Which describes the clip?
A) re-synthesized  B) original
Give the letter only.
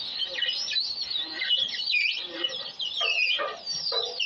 B